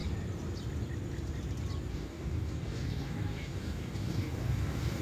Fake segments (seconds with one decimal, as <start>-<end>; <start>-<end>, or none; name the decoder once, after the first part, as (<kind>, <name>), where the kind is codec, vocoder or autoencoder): 1.9-5.0 (codec, DAC)